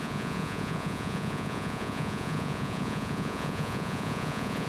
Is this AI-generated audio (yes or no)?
yes